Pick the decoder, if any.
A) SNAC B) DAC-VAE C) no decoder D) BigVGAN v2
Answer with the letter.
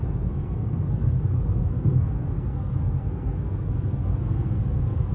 A